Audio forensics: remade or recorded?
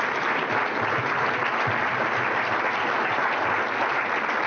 recorded